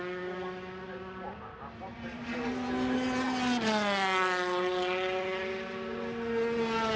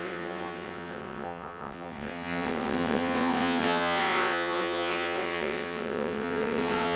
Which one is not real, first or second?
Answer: second